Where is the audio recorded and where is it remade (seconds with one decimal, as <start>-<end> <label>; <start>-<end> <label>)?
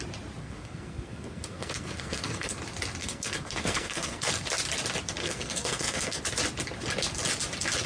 0.0-0.4 recorded; 0.4-2.6 remade; 2.6-3.0 recorded; 3.0-4.3 remade; 4.3-5.2 recorded; 5.2-6.2 remade; 6.2-7.9 recorded